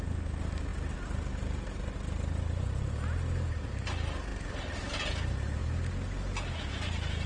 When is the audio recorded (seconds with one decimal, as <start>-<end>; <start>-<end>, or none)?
0.0-7.3